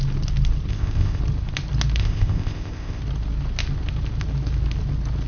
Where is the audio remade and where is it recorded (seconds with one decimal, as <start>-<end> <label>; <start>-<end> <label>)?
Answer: 0.0-0.7 recorded; 0.7-1.2 remade; 1.2-2.0 recorded; 2.0-3.0 remade; 3.0-5.3 recorded